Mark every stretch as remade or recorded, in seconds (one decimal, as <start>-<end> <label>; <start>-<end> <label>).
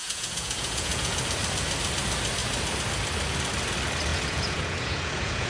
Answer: 0.0-1.2 remade; 1.2-4.1 recorded; 4.1-5.5 remade